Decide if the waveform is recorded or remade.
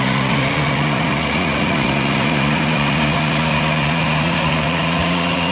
remade